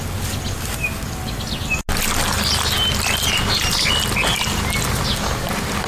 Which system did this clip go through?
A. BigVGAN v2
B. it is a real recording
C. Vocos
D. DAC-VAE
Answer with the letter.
B